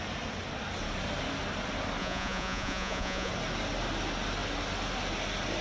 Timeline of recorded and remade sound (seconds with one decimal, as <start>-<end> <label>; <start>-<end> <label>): 0.0-2.0 recorded; 2.0-3.3 remade; 3.3-5.6 recorded